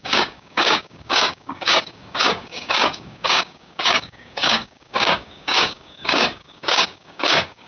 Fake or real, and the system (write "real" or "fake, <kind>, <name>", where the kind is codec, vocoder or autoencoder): fake, codec, DAC